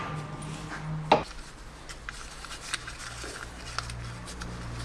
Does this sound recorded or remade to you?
recorded